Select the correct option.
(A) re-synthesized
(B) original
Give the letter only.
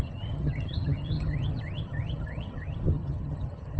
A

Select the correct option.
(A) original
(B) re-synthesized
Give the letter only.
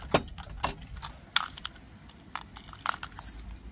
A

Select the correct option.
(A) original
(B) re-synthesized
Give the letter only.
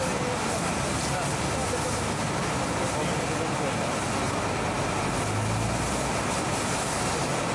A